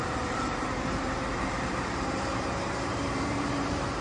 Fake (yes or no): yes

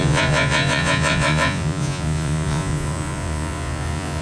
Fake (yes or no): yes